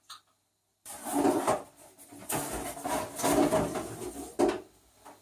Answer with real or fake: fake